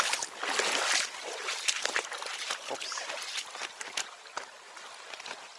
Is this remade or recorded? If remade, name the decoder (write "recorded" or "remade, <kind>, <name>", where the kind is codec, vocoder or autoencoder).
recorded